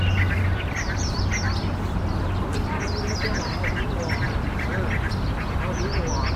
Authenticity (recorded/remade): recorded